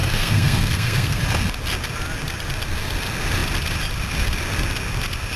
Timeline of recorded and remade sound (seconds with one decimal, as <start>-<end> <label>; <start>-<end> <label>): 0.0-1.2 remade; 1.2-5.4 recorded